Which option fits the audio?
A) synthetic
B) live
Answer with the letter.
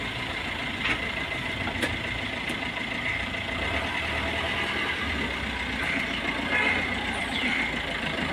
A